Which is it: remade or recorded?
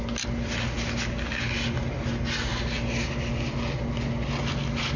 recorded